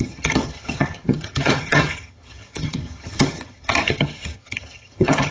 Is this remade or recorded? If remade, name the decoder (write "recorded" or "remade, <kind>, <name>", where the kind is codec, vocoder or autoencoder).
remade, vocoder, HiFi-GAN